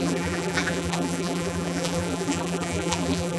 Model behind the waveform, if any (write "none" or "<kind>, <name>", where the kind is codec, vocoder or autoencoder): vocoder, BigVGAN v2